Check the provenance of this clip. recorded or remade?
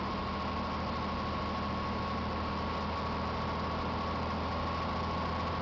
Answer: recorded